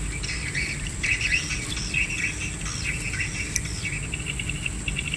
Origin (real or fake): real